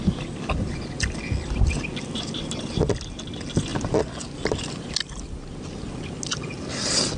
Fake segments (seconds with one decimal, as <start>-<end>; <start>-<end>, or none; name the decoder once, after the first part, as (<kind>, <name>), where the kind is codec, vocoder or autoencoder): none